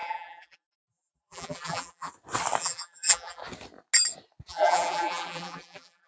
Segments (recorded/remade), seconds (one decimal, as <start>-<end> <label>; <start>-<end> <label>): 0.0-2.1 remade; 2.1-2.6 recorded; 2.6-3.4 remade; 3.4-4.5 recorded; 4.5-6.1 remade